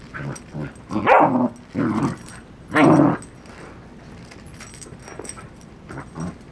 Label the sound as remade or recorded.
recorded